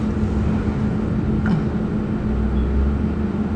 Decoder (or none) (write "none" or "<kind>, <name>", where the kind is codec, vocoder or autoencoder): none